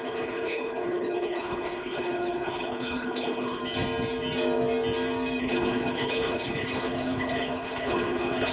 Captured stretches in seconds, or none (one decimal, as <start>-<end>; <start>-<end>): 3.6-5.4

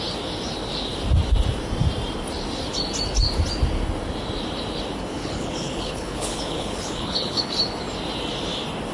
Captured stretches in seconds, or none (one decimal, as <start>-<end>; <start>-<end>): 0.0-5.1; 7.5-8.9

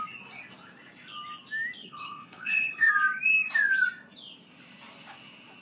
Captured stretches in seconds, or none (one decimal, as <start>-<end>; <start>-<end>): 0.0-1.8; 2.9-5.6